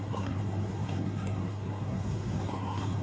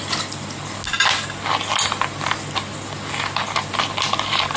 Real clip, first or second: second